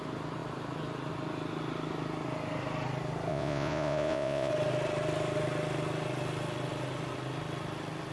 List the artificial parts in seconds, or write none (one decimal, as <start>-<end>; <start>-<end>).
3.3-4.5